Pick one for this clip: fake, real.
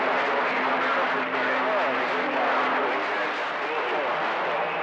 real